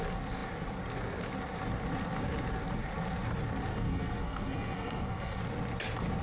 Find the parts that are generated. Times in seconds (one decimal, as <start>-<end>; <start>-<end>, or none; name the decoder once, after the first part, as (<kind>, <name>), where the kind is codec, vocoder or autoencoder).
3.7-5.4 (codec, SNAC)

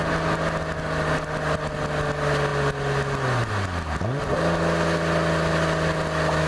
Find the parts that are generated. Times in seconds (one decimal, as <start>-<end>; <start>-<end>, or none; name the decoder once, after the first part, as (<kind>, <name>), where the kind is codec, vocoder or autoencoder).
none